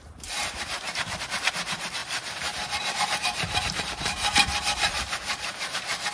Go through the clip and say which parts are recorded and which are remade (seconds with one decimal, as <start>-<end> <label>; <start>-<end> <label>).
0.0-0.9 remade; 0.9-2.0 recorded; 2.0-6.1 remade

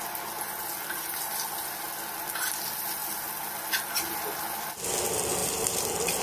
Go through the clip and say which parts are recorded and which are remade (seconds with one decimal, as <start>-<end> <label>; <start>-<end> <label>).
0.0-5.4 recorded; 5.4-6.2 remade